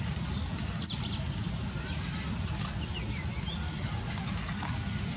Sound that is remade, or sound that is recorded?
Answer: recorded